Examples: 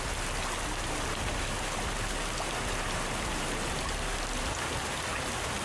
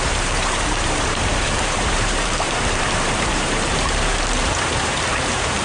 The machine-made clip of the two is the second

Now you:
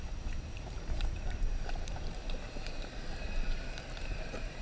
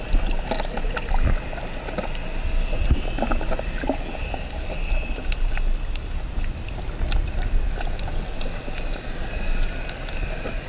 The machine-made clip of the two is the first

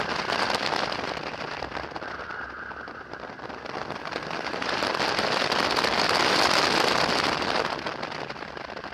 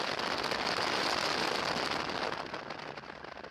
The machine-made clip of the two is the first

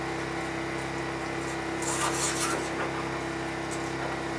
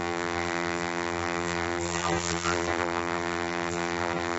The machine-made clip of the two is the second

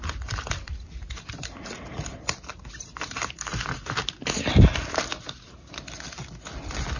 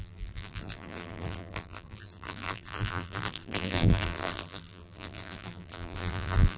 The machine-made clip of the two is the second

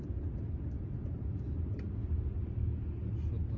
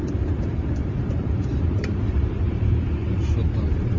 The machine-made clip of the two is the second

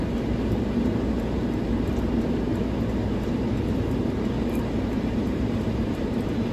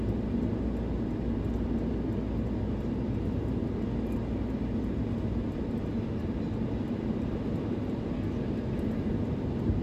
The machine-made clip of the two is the first